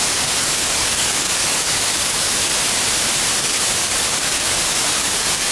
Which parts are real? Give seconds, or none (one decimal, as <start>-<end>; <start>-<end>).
2.5-3.4

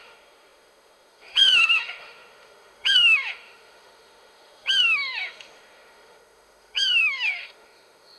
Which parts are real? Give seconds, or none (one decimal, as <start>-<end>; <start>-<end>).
none

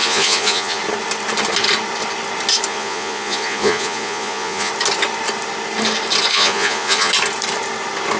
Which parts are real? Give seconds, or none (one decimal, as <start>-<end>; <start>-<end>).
0.8-2.7; 4.7-6.3; 7.1-8.2

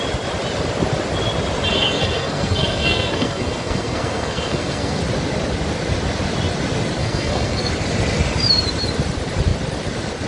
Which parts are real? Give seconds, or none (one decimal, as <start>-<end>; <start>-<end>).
0.0-1.7; 5.0-7.0; 7.7-10.3

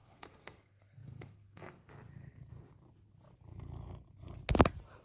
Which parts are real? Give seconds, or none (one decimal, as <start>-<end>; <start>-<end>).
1.9-5.0